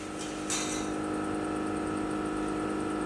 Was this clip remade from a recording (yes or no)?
no